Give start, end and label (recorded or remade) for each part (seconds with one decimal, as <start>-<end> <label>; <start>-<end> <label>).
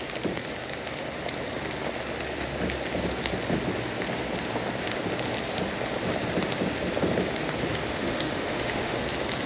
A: 0.0-7.8 recorded; 7.8-9.0 remade; 9.0-9.5 recorded